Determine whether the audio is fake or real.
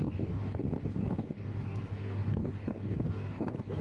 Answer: fake